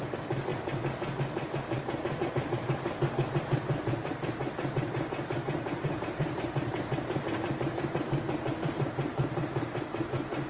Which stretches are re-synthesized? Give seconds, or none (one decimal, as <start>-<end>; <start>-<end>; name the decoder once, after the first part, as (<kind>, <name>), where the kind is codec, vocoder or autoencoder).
0.0-0.5 (vocoder, BigVGAN v2); 2.3-10.5